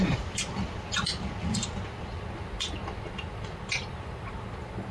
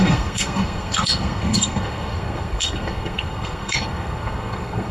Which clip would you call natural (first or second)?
first